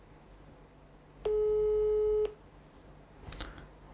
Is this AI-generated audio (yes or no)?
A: no